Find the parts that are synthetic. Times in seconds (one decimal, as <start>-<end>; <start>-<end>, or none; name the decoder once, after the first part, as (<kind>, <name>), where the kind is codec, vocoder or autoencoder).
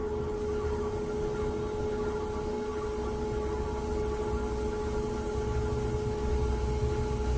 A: none